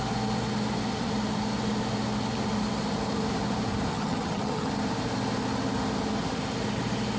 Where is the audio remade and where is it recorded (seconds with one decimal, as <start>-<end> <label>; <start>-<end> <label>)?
0.0-3.9 recorded; 3.9-4.7 remade; 4.7-7.2 recorded